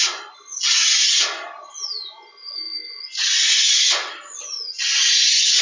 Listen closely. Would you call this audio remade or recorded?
recorded